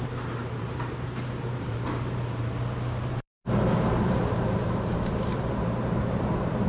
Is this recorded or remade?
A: remade